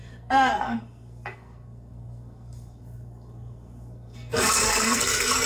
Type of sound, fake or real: fake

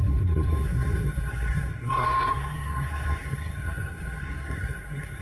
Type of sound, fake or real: fake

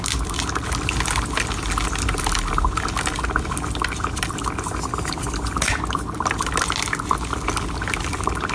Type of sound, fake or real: real